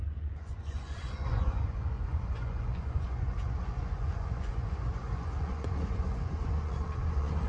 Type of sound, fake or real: fake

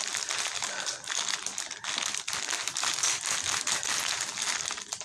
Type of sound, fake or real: real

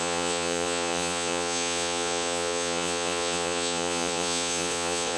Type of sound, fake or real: fake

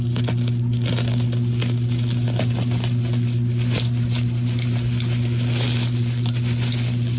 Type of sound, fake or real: real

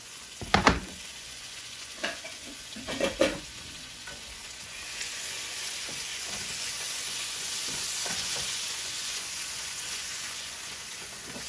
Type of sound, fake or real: fake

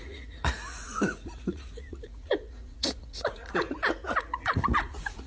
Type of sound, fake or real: fake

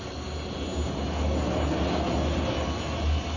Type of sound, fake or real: real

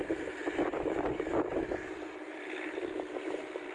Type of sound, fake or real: real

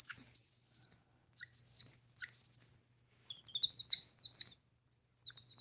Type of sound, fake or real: real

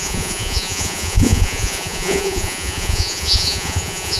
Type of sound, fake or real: fake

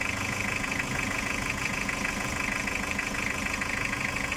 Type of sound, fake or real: fake